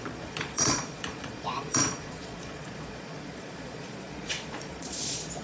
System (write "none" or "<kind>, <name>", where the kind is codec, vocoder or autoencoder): vocoder, Vocos